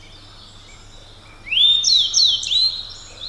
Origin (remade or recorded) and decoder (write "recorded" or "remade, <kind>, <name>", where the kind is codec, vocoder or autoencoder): recorded